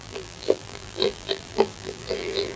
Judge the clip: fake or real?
fake